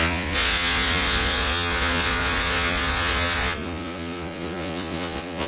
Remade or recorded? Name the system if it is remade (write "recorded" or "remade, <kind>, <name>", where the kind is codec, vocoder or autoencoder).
remade, vocoder, Vocos